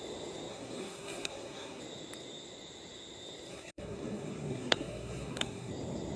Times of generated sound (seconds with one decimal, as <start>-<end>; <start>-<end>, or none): 0.5-1.8; 3.5-5.7